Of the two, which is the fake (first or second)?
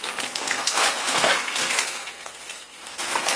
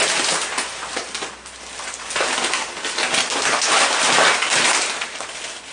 first